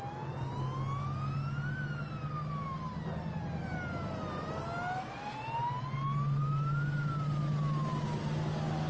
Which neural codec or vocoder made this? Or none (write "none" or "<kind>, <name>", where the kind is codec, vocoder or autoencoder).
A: none